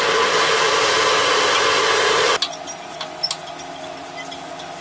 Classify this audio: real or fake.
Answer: real